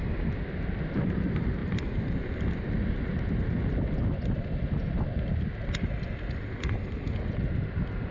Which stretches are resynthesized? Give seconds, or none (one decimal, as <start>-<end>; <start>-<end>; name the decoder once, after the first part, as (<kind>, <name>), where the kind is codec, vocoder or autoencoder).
none